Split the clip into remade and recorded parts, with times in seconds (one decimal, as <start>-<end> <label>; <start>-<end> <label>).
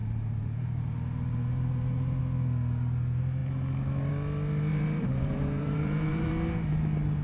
0.0-2.2 remade; 2.2-4.7 recorded; 4.7-6.3 remade; 6.3-7.2 recorded